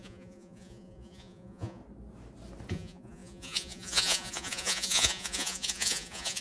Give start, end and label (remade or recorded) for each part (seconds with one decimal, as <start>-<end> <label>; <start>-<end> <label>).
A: 0.0-1.8 remade; 1.8-2.7 recorded; 2.7-6.4 remade